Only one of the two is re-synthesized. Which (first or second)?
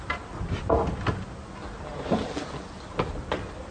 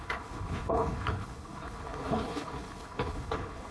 second